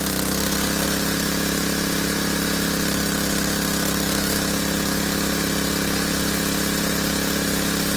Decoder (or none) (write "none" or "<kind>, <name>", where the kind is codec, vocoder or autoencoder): vocoder, BigVGAN v2